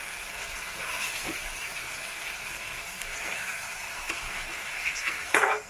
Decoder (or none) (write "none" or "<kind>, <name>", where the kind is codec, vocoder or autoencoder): codec, SNAC